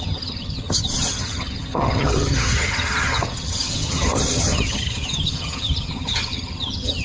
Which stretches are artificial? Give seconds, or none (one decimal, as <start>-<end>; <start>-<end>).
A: 0.0-7.0